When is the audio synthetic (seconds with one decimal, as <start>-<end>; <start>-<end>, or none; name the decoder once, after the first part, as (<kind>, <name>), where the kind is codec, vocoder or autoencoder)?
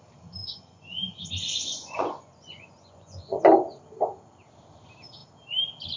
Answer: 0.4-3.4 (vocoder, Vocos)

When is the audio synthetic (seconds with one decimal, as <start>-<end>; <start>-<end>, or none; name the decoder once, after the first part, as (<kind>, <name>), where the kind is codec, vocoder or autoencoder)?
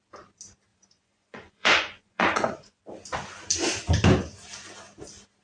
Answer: 0.7-2.8 (vocoder, Vocos)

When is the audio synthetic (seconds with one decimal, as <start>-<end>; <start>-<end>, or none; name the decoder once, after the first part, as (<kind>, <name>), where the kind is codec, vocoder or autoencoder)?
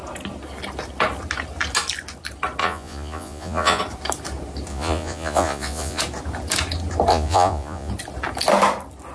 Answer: 2.6-3.8 (vocoder, Vocos); 4.7-6.0; 7.1-7.9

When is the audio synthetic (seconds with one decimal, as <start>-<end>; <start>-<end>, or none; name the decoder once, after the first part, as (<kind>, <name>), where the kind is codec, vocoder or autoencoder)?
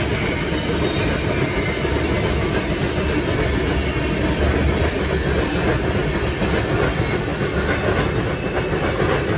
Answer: none